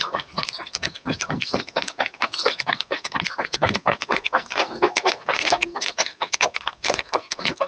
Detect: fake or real fake